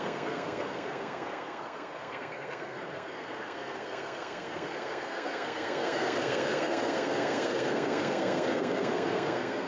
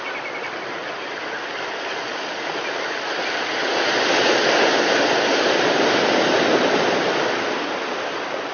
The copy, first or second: first